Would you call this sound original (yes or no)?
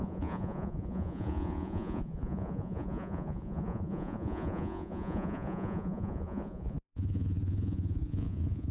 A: no